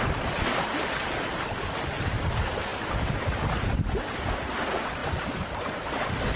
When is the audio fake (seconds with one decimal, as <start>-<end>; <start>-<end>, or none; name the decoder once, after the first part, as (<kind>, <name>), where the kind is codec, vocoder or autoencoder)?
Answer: 0.0-1.0 (vocoder, BigVGAN v2); 1.9-6.4